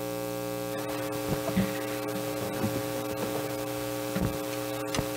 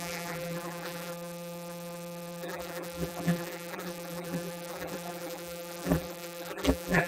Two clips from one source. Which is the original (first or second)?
first